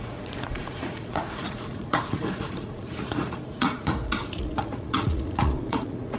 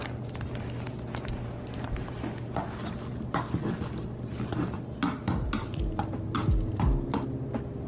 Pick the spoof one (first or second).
first